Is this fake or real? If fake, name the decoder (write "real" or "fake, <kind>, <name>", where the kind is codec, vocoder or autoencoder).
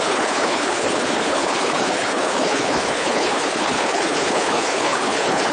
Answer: fake, codec, HILCodec